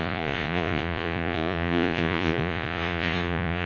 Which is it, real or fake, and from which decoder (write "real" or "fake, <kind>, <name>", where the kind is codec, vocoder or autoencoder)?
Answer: fake, vocoder, Vocos